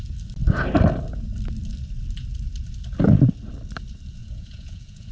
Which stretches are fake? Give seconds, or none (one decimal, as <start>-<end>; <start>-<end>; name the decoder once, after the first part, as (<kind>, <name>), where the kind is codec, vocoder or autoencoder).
4.2-5.1 (vocoder, Vocos)